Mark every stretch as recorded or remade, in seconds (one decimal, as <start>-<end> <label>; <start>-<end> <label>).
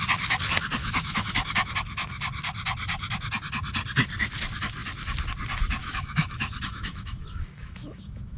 0.0-0.8 recorded; 0.8-1.7 remade; 1.7-5.8 recorded; 5.8-8.4 remade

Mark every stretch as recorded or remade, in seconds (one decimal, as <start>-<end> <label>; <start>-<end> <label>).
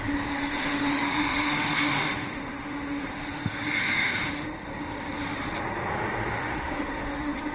0.0-4.7 remade; 4.7-5.9 recorded; 5.9-7.5 remade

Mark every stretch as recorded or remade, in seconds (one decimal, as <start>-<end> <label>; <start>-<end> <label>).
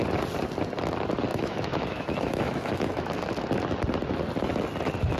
0.0-1.3 recorded; 1.3-3.2 remade; 3.2-5.2 recorded